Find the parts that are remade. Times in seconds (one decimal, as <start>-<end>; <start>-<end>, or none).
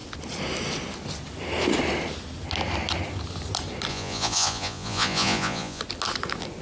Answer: 3.9-5.8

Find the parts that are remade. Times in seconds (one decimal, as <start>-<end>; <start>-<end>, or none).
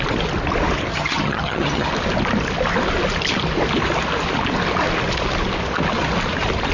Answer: 0.9-1.9